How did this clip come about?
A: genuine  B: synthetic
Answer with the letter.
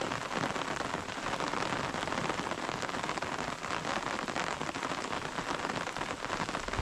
A